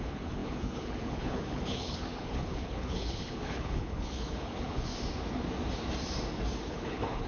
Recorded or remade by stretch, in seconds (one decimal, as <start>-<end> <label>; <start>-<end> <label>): 0.0-4.9 remade; 4.9-6.7 recorded; 6.7-7.3 remade